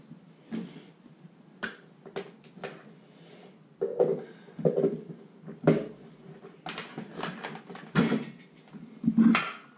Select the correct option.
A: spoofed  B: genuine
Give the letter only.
B